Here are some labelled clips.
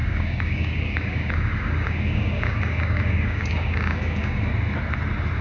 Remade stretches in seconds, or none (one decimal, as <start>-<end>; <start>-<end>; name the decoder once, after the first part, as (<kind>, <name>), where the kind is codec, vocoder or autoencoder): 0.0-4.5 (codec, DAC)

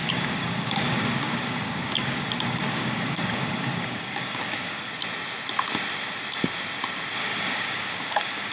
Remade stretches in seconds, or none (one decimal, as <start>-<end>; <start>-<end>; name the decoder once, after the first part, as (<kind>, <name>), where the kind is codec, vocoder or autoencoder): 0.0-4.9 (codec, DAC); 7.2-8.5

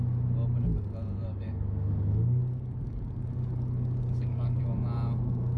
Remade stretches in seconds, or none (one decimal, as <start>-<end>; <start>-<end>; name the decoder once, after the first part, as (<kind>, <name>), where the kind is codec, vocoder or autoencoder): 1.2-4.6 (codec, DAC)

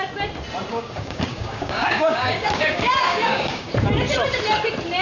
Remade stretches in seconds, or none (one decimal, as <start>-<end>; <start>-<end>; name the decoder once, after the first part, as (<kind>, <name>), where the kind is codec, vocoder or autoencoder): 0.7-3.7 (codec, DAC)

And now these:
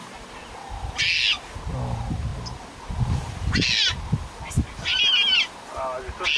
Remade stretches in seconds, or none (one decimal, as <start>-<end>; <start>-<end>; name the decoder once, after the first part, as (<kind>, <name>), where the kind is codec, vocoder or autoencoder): none

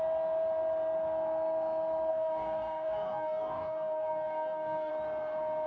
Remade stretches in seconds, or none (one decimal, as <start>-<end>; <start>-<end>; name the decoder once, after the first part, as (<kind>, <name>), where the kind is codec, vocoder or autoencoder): 2.1-4.9 (codec, DAC)

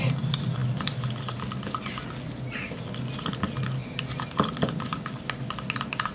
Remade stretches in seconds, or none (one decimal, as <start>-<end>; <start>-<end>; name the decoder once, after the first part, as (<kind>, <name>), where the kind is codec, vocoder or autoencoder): none